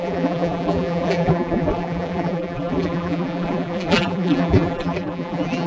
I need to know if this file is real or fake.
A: fake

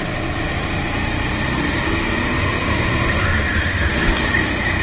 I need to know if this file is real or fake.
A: real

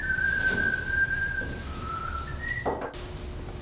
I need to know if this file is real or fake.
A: real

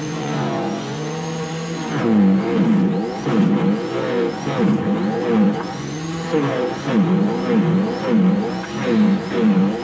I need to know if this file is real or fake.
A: fake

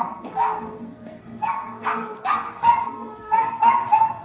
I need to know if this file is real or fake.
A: fake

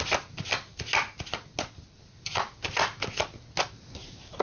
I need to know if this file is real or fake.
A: real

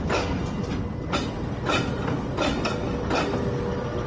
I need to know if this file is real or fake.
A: real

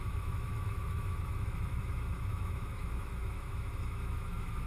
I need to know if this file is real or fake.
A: fake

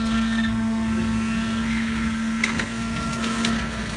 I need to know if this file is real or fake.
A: fake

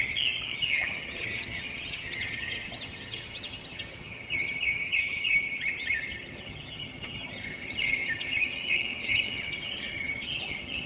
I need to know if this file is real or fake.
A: fake